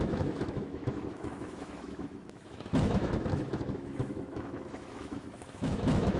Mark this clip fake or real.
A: fake